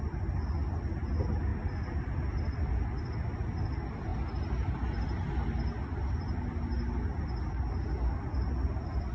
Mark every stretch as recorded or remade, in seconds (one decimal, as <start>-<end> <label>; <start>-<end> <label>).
0.0-9.1 recorded

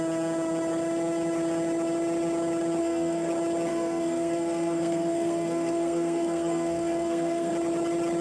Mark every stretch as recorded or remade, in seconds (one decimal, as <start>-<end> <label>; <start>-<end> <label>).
0.0-2.8 recorded; 2.8-3.3 remade; 3.3-3.7 recorded; 3.7-7.5 remade; 7.5-8.2 recorded

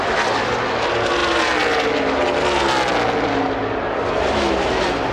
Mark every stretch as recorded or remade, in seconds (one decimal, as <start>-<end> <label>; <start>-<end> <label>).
0.0-5.1 recorded

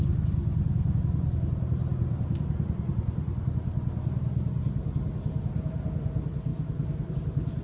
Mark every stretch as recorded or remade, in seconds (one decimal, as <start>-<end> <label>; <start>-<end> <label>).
0.0-7.6 recorded